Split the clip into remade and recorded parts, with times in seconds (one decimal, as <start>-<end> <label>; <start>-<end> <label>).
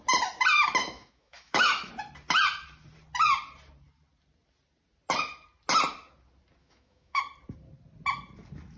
0.0-0.8 recorded; 0.8-1.9 remade; 1.9-6.6 recorded; 6.6-7.2 remade; 7.2-8.8 recorded